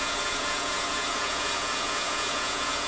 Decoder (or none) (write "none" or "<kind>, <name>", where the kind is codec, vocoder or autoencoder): vocoder, Vocos